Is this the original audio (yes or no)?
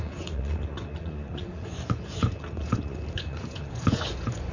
no